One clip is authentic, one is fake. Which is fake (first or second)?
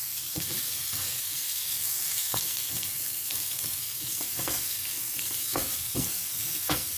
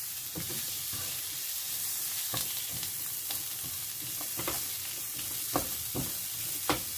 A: first